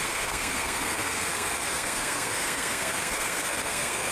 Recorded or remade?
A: remade